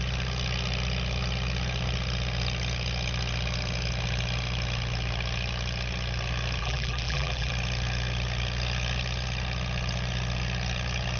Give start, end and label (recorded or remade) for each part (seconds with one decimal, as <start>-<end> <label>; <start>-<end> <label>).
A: 0.0-6.6 recorded; 6.6-7.5 remade; 7.5-11.2 recorded